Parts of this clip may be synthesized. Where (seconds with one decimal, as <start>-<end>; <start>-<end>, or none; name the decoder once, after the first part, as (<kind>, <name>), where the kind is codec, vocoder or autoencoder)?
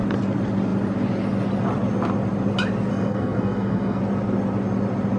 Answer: 2.9-4.0 (codec, SNAC)